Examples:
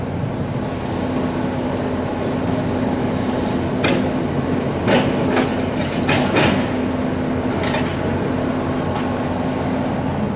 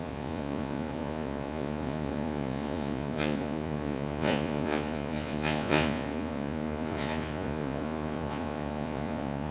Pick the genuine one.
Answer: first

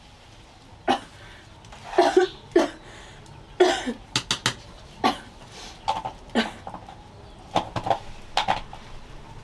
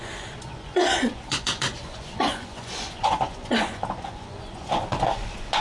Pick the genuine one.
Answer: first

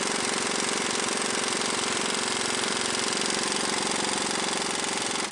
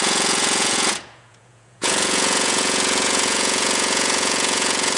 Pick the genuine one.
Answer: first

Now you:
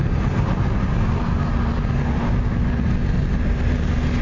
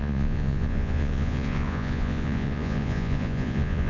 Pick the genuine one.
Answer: first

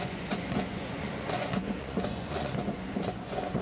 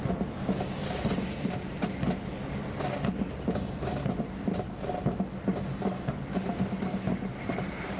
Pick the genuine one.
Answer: second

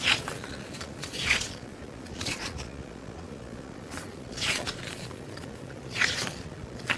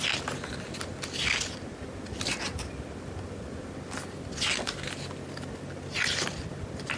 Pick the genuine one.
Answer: second